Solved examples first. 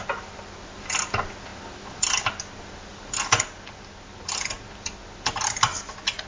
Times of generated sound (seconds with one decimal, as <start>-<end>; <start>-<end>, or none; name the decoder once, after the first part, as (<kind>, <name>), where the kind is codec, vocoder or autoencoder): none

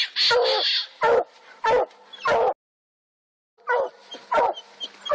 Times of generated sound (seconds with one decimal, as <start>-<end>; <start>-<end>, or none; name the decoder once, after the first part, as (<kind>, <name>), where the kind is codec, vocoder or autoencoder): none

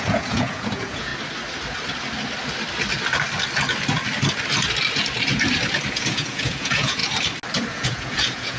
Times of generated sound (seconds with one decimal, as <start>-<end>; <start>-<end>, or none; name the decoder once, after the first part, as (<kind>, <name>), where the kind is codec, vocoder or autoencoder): 0.0-1.1 (vocoder, Vocos); 5.9-7.0; 7.7-8.6

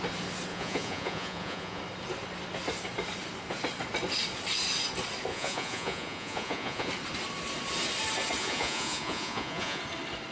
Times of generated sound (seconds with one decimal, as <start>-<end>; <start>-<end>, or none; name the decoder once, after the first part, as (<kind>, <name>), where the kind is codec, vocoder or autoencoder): 0.5-1.8 (vocoder, Vocos); 5.3-6.9; 8.4-9.8

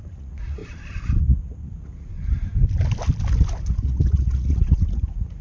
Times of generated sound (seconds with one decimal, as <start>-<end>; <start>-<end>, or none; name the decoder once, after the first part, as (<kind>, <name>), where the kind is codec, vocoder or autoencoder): 0.0-0.6 (vocoder, Vocos); 1.2-2.1; 3.7-5.4